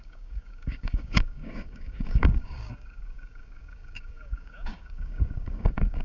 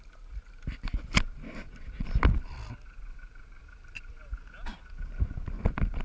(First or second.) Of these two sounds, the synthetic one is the first